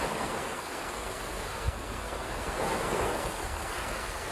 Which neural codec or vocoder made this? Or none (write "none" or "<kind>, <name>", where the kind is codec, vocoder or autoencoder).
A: codec, SNAC